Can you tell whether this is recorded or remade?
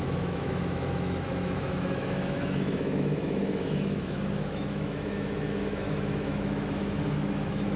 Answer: remade